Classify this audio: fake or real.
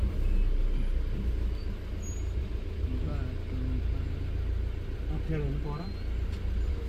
real